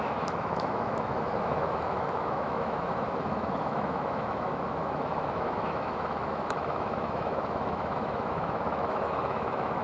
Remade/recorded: remade